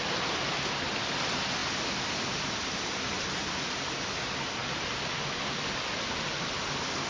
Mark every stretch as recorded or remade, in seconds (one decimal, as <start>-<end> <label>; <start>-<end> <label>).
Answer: 0.0-7.1 recorded